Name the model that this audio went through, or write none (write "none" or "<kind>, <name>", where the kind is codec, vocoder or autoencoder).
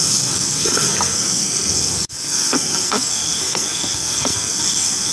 codec, SNAC